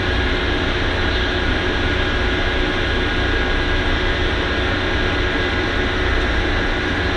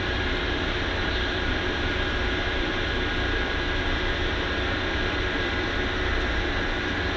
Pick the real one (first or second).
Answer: first